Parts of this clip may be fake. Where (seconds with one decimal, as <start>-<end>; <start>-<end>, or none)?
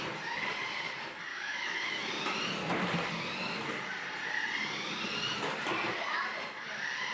1.3-2.0